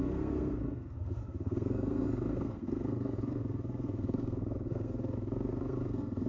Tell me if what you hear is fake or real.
fake